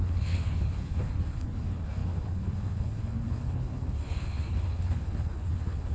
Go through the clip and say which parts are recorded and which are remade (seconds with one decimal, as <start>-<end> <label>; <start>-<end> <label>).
0.0-5.9 remade